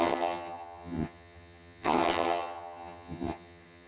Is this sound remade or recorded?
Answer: remade